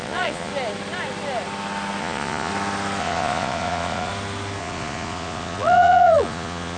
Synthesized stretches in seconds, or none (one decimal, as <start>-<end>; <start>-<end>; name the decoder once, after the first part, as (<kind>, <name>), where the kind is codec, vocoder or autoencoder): 0.0-0.5 (vocoder, Vocos); 2.0-2.5; 3.0-4.1; 4.6-6.8